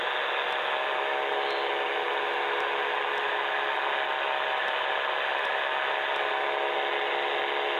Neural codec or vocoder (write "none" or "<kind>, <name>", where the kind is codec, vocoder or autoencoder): none